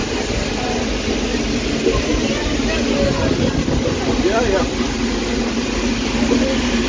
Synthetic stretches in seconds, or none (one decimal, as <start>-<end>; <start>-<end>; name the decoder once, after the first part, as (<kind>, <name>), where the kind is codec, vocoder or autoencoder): none